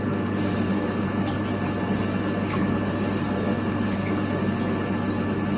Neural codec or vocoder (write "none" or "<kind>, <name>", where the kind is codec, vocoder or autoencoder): none